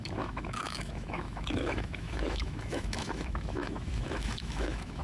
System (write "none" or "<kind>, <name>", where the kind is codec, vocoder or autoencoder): autoencoder, DAC-VAE